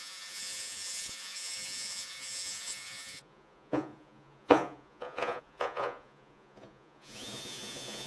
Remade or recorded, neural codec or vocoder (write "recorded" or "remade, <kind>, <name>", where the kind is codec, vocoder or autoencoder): remade, vocoder, Vocos